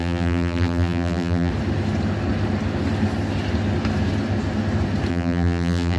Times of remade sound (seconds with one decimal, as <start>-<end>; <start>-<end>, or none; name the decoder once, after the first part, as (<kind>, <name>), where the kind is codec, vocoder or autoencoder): 0.0-1.5 (vocoder, BigVGAN v2); 5.1-6.0